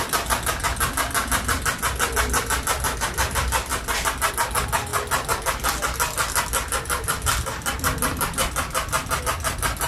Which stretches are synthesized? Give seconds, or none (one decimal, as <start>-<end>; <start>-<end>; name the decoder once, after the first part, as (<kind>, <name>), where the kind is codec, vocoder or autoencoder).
3.7-4.3 (vocoder, BigVGAN v2)

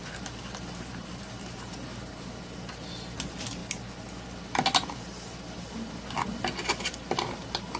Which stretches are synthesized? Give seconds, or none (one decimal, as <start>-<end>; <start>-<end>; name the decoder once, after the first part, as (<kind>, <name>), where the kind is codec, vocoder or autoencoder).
none